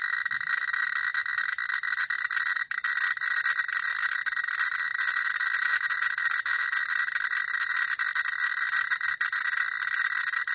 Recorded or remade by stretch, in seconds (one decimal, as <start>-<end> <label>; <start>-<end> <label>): 0.0-10.5 recorded